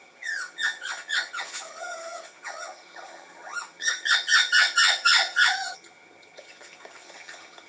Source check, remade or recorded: remade